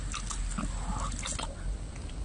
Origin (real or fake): real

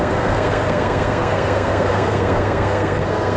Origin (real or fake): fake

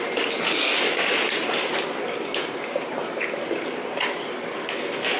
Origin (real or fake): real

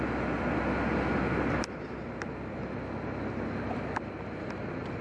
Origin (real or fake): real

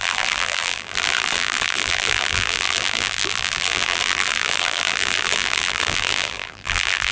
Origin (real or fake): fake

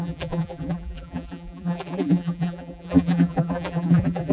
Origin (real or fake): fake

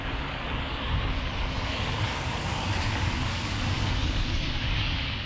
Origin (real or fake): fake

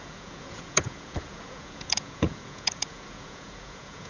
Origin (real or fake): fake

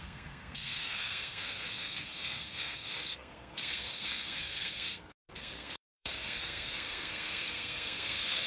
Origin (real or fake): fake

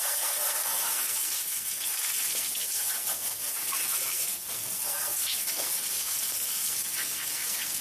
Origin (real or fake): fake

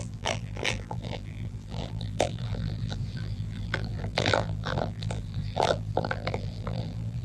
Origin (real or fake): fake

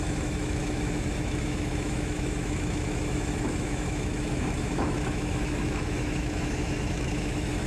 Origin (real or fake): fake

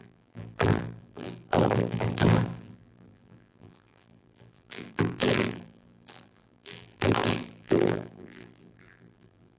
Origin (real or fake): fake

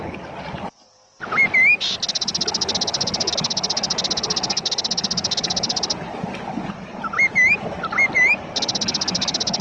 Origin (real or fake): real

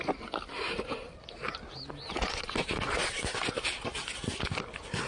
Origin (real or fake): real